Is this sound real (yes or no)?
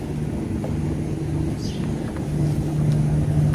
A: yes